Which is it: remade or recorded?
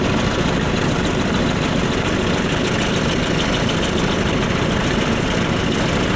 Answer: recorded